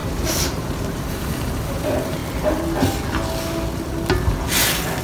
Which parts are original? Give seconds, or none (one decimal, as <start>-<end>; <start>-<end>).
2.2-5.0